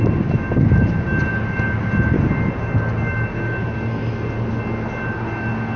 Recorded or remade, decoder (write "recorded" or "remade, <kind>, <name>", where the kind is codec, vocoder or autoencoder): recorded